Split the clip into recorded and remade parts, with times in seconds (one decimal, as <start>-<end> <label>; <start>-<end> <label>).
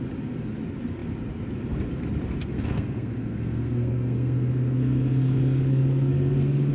0.0-2.4 recorded; 2.4-6.7 remade